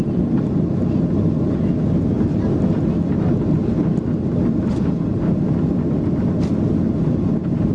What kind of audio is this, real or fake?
real